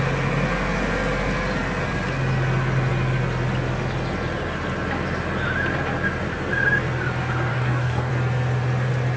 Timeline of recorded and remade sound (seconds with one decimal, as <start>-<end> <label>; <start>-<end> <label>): 0.0-7.5 recorded; 7.5-8.1 remade; 8.1-9.2 recorded